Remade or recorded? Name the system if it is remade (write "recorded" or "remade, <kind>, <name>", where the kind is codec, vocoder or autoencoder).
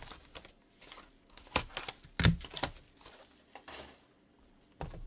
recorded